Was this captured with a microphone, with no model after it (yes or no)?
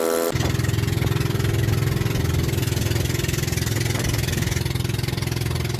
yes